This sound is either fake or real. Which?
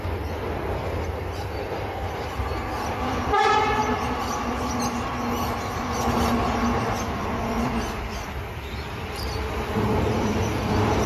fake